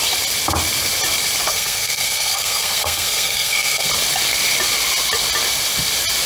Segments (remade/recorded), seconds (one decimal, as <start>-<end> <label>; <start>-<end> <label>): 0.0-1.5 recorded; 1.5-3.9 remade; 3.9-6.3 recorded